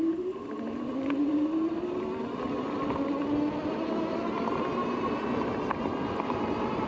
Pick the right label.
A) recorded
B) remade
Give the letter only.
A